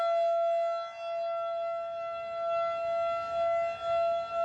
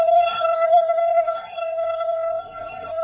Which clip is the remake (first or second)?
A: second